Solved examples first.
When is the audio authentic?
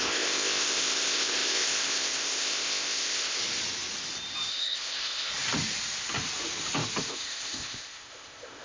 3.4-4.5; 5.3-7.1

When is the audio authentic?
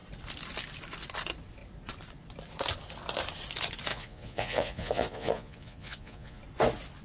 0.0-3.9; 6.4-7.0